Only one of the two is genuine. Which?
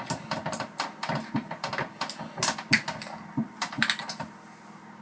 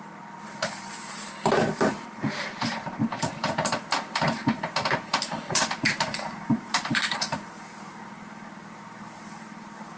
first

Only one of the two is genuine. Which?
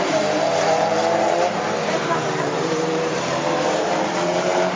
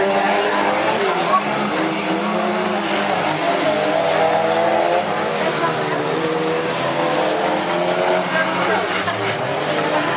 second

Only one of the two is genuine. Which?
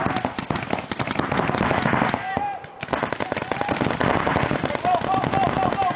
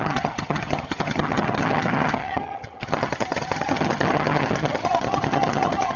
first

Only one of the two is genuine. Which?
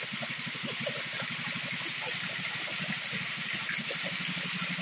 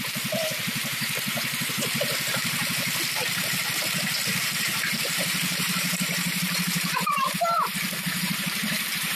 first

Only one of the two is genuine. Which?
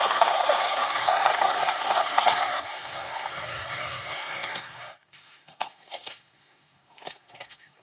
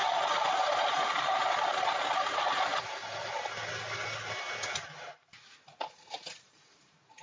second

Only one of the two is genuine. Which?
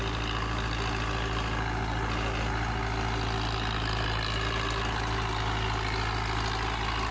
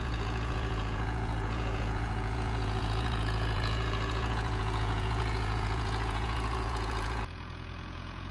first